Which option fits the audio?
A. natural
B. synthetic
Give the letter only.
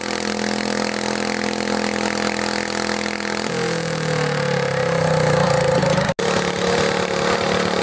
A